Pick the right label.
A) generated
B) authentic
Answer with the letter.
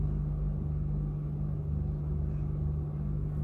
B